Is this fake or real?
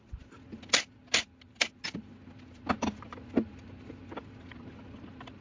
real